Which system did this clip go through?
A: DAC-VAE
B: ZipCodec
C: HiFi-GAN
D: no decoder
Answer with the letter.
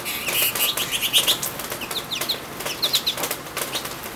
D